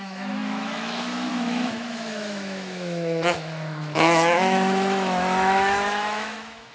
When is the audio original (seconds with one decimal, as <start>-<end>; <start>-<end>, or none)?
none